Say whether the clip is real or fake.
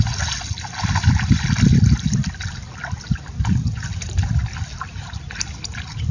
real